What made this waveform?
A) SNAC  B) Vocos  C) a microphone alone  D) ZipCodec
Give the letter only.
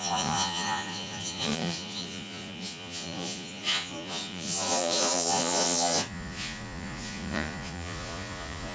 B